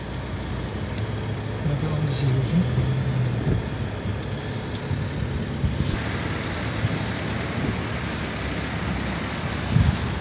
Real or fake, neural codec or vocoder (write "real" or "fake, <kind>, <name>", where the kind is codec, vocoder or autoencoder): real